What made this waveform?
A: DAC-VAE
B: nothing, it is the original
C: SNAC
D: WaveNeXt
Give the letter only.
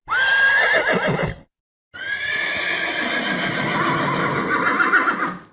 B